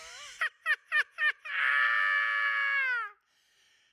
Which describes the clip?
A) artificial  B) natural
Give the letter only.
B